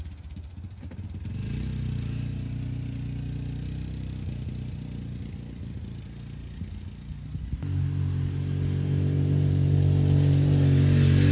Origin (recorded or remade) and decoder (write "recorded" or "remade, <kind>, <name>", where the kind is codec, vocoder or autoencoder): recorded